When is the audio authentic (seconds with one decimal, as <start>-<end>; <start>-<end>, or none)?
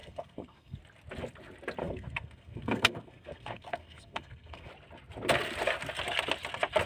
0.8-1.8; 4.7-6.9